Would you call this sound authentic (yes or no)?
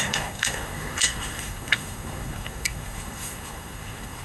no